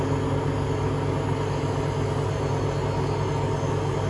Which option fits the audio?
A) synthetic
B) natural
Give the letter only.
B